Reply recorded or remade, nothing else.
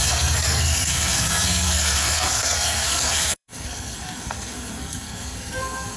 remade